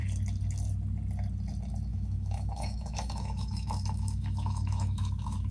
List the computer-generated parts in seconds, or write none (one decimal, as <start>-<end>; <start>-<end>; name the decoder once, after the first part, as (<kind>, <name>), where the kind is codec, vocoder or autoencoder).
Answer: 1.9-5.5 (autoencoder, DAC-VAE)